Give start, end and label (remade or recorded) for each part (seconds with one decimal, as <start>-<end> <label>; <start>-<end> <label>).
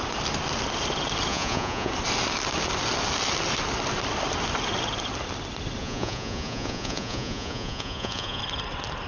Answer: 0.0-1.3 recorded; 1.3-1.9 remade; 1.9-5.8 recorded; 5.8-8.4 remade; 8.4-9.1 recorded